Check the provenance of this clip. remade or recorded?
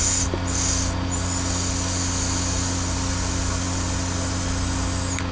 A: recorded